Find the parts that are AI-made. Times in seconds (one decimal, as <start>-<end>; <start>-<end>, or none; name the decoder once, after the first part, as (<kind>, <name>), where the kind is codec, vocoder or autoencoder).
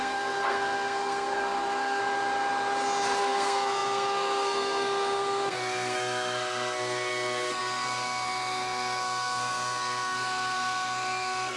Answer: 0.0-2.0 (codec, SNAC); 3.2-11.6